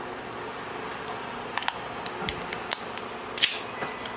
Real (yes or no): yes